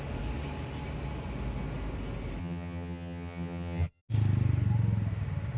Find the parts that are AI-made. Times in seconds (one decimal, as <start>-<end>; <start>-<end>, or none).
2.4-4.0